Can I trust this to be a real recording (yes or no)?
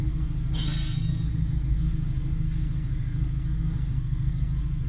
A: no